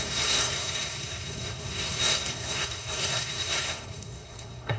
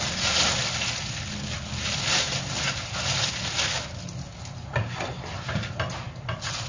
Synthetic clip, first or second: first